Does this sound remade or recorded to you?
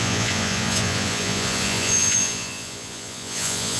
remade